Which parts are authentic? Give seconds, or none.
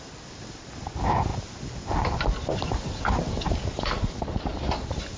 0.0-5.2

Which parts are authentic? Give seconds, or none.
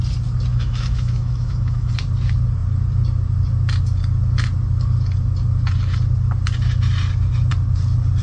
0.0-0.5; 1.9-8.2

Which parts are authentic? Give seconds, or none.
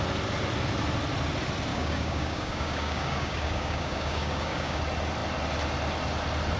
0.0-1.7; 4.8-6.6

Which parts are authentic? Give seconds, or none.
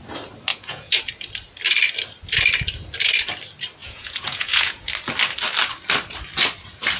0.0-0.5; 1.1-3.8; 4.9-7.0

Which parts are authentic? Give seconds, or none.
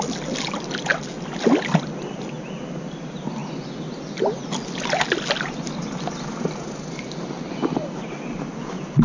0.0-9.0